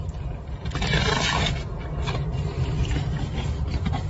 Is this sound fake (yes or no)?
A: no